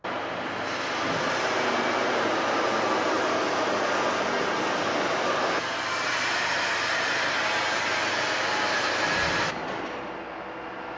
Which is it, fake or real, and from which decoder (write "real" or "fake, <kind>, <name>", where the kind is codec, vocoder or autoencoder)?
real